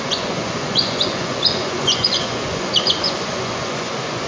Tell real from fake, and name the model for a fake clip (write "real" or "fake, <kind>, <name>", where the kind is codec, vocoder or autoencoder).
fake, vocoder, Vocos